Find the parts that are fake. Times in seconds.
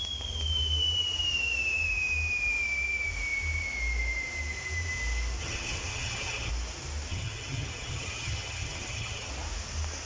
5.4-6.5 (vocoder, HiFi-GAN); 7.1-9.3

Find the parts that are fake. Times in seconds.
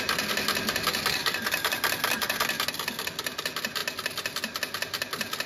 none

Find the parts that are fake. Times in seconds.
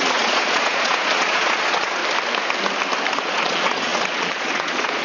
0.0-2.0 (vocoder, Vocos); 3.2-5.0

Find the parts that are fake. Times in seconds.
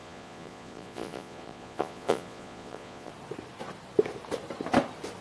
0.0-3.1 (vocoder, Vocos)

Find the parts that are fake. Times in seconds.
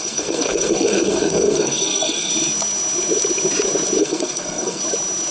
0.0-2.3 (codec, SNAC); 4.0-4.8